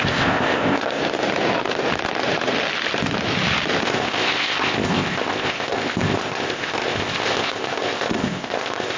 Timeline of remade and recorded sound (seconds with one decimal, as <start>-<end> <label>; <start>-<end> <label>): 0.0-1.0 remade; 1.0-3.8 recorded; 3.8-9.0 remade